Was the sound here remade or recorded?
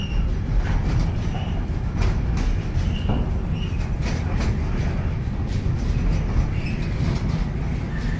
recorded